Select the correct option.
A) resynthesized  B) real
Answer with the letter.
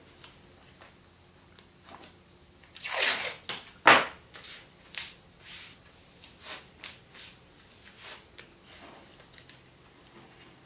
B